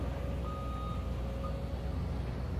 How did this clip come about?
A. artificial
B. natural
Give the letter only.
B